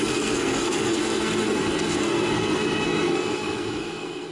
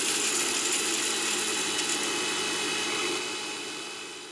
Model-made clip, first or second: first